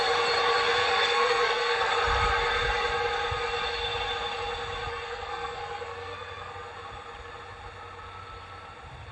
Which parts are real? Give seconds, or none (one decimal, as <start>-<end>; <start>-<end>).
0.0-0.8; 1.9-4.9; 6.5-9.1